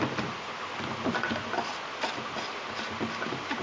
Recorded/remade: remade